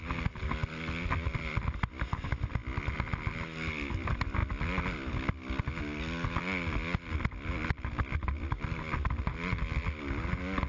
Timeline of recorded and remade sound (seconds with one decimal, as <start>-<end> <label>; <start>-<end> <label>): 0.0-10.7 recorded